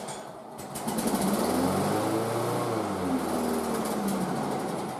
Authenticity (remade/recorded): recorded